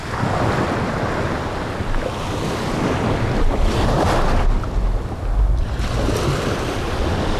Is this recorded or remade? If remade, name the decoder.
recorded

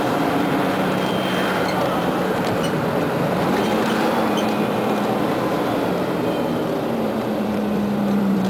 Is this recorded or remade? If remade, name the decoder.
remade, vocoder, BigVGAN v2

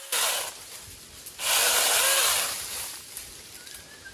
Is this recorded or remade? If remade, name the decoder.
recorded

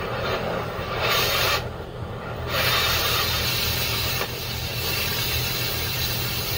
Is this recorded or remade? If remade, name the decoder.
remade, vocoder, BigVGAN v2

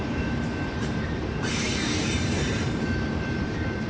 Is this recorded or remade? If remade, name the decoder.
remade, vocoder, BigVGAN v2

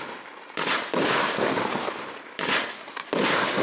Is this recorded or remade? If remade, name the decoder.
remade, vocoder, BigVGAN v2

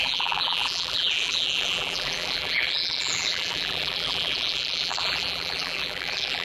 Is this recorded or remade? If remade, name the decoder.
remade, vocoder, BigVGAN v2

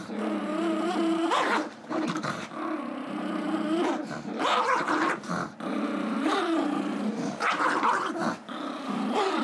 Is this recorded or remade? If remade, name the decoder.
remade, vocoder, BigVGAN v2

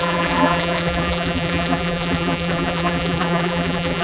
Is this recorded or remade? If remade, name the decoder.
remade, vocoder, BigVGAN v2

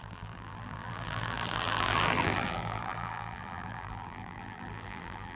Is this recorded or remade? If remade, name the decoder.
remade, vocoder, BigVGAN v2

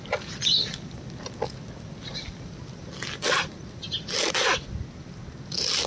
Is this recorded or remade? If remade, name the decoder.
recorded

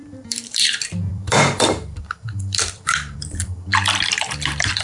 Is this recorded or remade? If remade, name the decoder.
remade, vocoder, BigVGAN v2